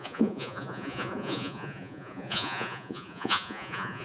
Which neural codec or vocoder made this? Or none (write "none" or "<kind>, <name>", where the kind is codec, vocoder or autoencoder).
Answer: vocoder, Vocos